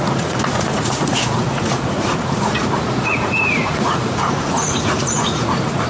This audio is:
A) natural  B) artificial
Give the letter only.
B